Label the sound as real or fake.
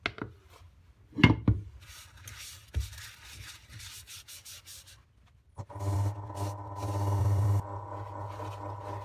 real